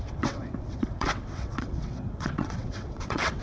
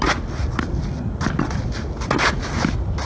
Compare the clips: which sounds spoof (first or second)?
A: first